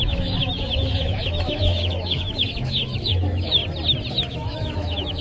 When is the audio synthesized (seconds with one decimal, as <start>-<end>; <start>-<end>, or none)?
0.0-3.6; 4.1-5.2